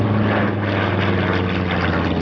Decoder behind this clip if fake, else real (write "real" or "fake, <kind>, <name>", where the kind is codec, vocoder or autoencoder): real